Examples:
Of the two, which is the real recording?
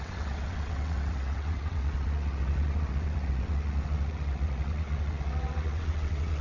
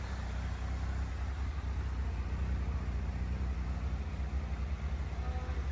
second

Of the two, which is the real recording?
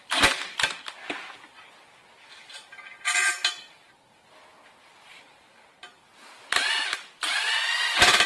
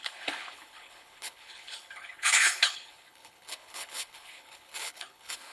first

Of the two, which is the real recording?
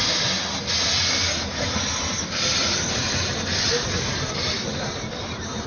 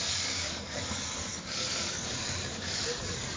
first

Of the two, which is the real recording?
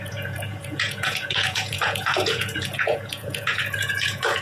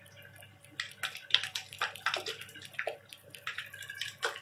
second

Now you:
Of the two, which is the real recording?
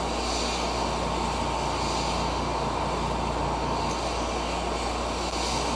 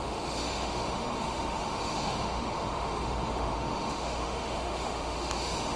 first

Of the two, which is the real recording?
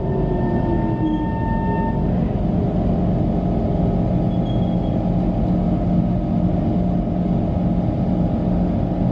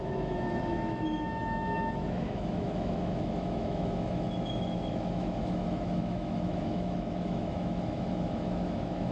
first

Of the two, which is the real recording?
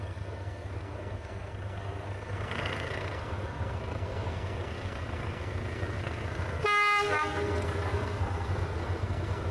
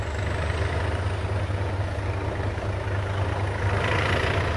second